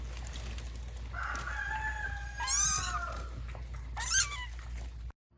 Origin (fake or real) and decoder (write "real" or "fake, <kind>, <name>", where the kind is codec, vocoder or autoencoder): real